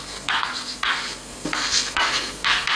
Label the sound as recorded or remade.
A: remade